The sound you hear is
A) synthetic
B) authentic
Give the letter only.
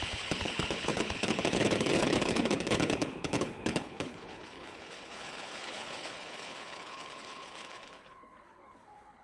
A